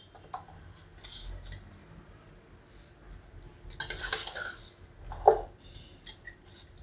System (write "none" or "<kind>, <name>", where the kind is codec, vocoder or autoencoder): none